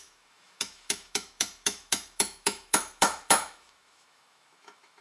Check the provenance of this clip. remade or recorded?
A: remade